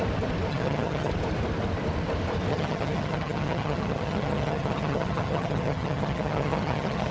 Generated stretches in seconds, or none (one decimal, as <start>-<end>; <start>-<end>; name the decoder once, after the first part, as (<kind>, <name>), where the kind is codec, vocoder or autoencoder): 0.5-1.1 (vocoder, HiFi-GAN); 2.5-7.1